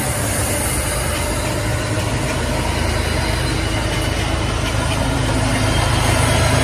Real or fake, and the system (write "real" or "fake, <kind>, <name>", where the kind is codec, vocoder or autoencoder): real